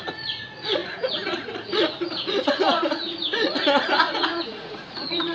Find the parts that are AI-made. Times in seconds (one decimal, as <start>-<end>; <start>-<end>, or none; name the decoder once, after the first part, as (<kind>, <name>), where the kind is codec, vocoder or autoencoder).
0.0-5.3 (vocoder, Vocos)

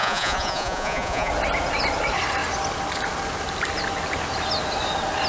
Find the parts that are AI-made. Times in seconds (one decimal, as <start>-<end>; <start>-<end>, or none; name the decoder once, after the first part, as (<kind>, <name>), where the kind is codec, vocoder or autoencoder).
0.0-1.3 (vocoder, Vocos)